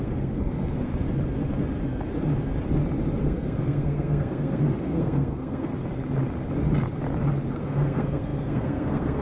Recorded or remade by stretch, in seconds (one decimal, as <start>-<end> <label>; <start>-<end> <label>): 0.0-0.9 remade; 0.9-3.2 recorded; 3.2-5.7 remade; 5.7-7.5 recorded; 7.5-9.2 remade